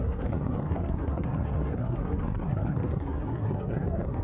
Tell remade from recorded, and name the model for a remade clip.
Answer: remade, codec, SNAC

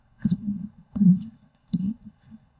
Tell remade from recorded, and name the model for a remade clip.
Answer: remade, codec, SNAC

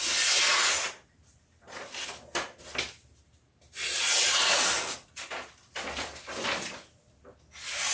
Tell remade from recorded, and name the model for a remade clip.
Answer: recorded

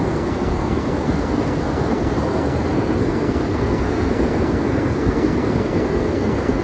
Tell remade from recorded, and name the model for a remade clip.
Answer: remade, codec, SNAC